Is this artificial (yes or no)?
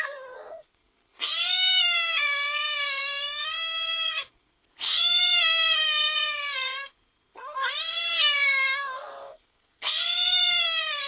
yes